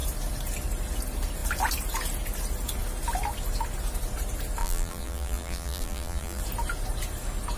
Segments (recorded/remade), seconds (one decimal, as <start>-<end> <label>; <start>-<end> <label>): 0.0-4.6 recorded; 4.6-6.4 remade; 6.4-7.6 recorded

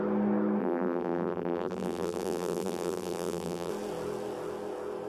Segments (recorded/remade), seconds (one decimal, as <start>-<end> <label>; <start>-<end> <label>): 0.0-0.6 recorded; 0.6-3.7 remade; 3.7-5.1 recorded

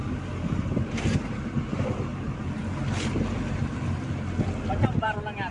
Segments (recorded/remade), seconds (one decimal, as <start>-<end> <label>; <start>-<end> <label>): 0.0-0.9 recorded; 0.9-2.1 remade; 2.1-5.0 recorded; 5.0-5.5 remade

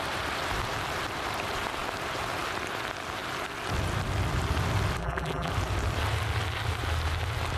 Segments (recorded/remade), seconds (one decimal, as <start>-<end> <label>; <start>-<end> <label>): 0.0-5.0 recorded; 5.0-5.5 remade; 5.5-7.6 recorded

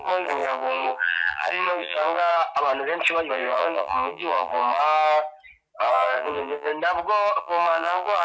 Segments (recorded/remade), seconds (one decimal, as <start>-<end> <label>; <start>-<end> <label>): 0.0-2.3 remade; 2.3-3.3 recorded; 3.3-4.8 remade; 4.8-5.9 recorded; 5.9-6.7 remade; 6.7-7.4 recorded; 7.4-8.2 remade